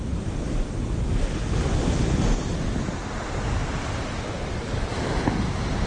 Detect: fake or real real